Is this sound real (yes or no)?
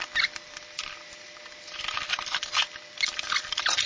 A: no